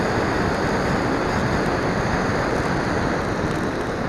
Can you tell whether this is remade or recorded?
recorded